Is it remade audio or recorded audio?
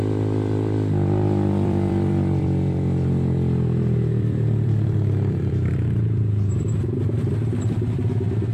remade